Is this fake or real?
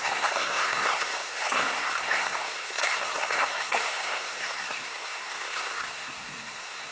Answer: fake